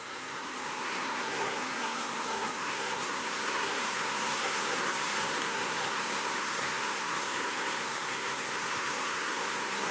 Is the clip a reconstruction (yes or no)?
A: yes